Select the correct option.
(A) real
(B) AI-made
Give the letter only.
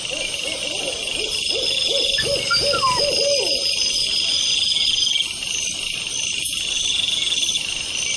A